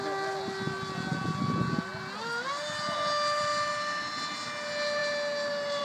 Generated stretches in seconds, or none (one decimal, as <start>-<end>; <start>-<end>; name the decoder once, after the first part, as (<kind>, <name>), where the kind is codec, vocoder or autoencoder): none